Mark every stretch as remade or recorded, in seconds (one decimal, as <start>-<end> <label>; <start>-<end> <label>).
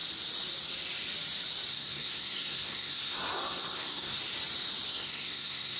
0.0-1.7 recorded; 1.7-4.2 remade; 4.2-4.9 recorded; 4.9-5.8 remade